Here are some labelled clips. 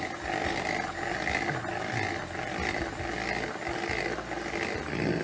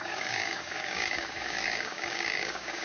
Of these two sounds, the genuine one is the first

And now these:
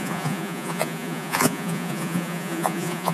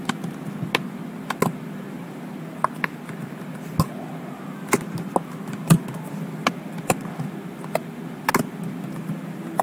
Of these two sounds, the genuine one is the second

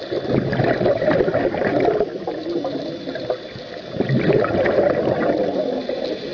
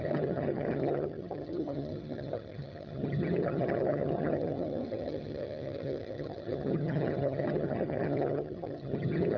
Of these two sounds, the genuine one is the first